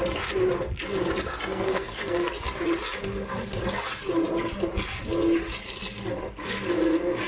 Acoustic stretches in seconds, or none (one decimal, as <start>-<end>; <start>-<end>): 0.0-1.3; 2.3-7.3